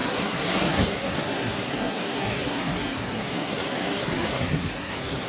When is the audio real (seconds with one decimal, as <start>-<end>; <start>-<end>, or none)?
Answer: none